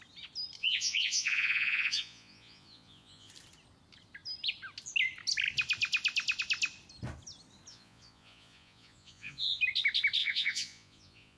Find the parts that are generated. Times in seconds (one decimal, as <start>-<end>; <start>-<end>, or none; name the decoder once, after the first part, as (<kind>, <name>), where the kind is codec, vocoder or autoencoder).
0.6-3.3 (vocoder, Vocos); 7.7-9.6; 10.2-11.4